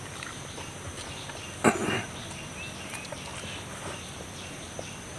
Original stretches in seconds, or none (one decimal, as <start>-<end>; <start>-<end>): 0.0-5.2